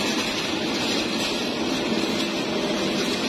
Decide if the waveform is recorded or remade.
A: recorded